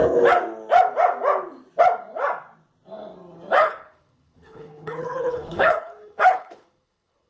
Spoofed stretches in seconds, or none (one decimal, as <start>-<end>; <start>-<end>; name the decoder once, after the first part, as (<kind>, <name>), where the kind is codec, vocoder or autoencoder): 3.6-7.3 (codec, HILCodec)